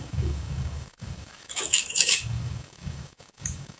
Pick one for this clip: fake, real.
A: fake